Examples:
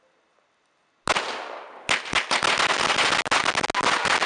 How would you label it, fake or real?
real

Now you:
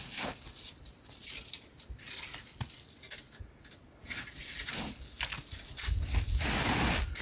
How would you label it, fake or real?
real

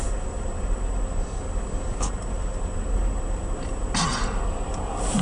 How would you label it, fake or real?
real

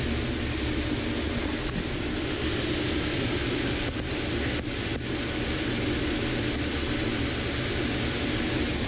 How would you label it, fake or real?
real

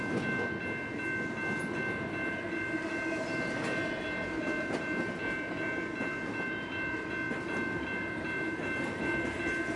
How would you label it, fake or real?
real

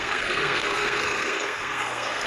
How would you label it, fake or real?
fake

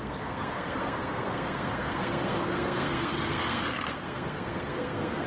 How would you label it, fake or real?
fake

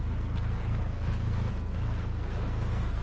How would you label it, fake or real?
fake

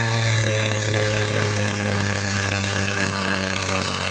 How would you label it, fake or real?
fake